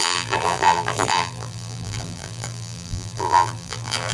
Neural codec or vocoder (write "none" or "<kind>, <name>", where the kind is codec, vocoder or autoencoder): vocoder, BigVGAN v2